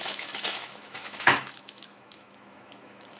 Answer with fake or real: fake